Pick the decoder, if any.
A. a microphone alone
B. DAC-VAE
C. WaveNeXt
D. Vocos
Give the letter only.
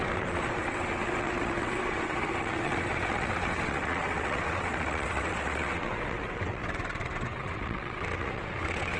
C